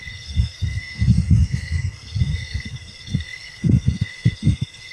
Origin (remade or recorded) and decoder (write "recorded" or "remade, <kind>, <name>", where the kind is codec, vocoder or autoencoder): remade, codec, SNAC